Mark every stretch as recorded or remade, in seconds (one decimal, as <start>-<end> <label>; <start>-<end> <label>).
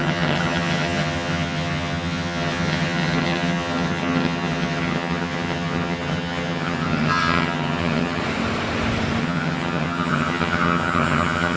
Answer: 0.0-8.2 remade; 8.2-9.2 recorded; 9.2-11.6 remade